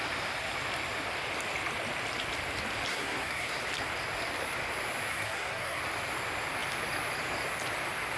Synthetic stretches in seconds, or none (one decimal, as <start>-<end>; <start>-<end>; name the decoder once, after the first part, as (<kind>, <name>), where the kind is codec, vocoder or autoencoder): 2.9-3.6 (codec, SNAC); 5.1-5.8